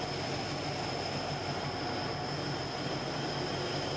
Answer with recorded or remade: recorded